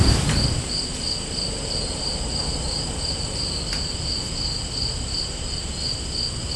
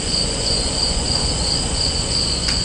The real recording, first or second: first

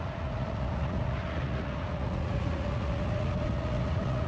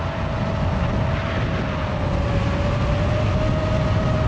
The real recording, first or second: second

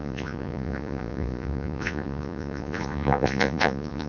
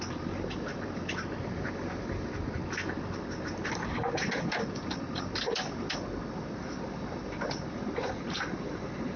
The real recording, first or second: second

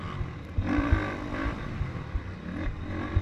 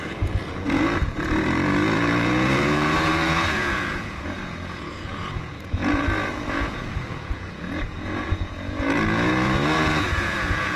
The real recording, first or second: first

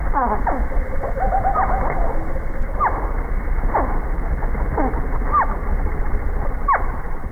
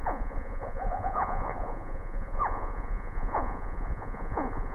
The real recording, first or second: first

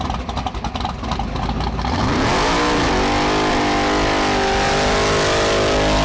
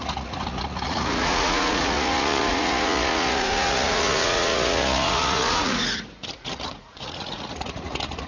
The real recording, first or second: first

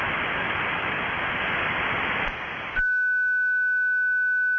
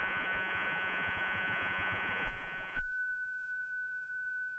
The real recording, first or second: first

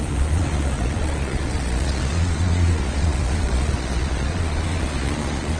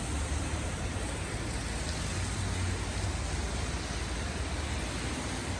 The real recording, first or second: second